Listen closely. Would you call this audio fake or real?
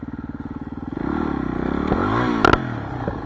real